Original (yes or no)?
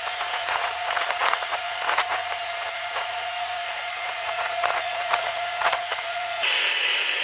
no